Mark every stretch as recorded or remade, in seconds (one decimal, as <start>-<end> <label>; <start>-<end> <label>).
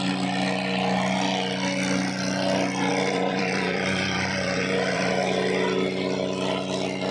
0.0-2.9 recorded; 2.9-5.1 remade; 5.1-7.1 recorded